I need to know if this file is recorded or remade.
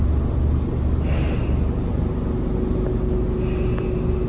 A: recorded